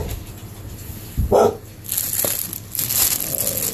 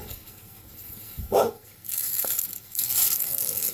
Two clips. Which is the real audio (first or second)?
first